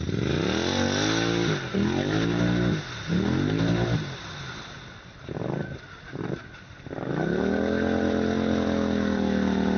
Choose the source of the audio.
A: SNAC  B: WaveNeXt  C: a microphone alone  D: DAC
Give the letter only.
C